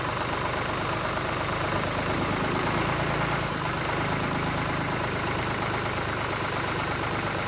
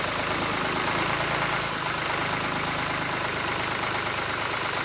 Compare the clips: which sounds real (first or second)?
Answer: second